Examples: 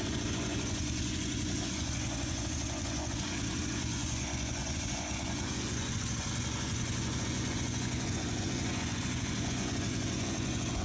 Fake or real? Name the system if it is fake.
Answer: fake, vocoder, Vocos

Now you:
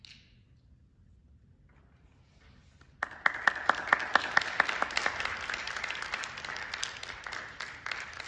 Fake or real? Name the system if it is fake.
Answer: real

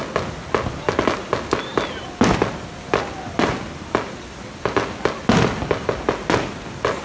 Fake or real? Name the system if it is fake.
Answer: real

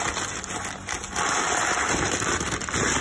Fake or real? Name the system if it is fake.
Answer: real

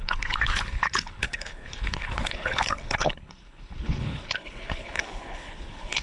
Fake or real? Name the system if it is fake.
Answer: fake, codec, HILCodec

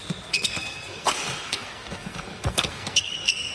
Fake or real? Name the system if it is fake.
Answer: fake, codec, SNAC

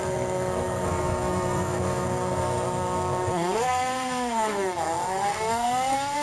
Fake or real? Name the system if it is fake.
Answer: fake, codec, SNAC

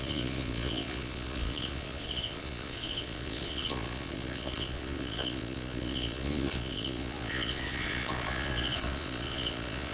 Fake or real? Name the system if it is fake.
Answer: fake, vocoder, Vocos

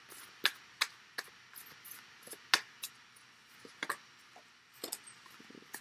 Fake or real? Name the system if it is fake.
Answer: real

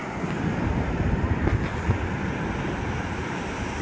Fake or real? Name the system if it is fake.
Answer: real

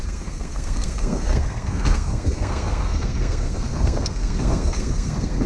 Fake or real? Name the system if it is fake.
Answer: fake, codec, SNAC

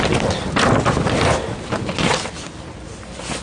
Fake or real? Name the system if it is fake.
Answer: real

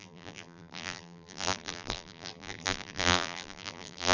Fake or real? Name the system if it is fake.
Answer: fake, vocoder, BigVGAN v2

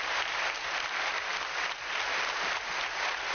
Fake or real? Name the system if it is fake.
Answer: real